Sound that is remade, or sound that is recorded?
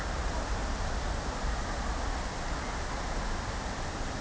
recorded